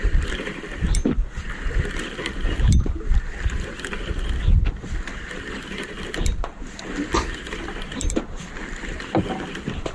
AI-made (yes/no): no